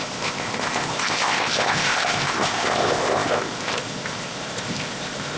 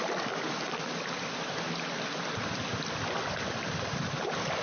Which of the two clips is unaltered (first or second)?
second